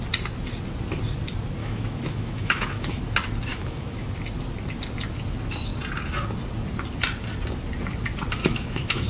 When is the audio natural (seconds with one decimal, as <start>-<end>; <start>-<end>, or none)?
0.0-1.6; 3.0-3.5; 4.1-8.4